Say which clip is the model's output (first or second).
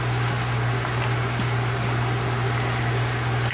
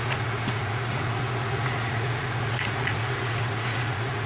second